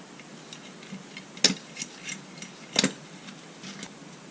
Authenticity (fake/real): real